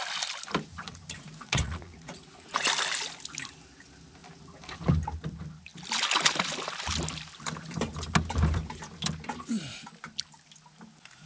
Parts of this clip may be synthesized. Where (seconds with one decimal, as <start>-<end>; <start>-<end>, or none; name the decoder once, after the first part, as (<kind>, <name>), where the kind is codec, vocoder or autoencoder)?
0.7-2.7 (vocoder, Vocos)